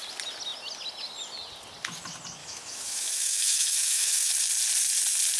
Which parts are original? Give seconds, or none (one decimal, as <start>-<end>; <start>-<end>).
0.0-2.4; 4.3-5.4